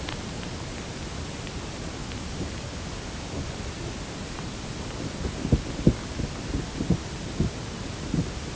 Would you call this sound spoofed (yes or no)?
no